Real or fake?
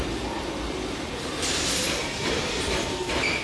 fake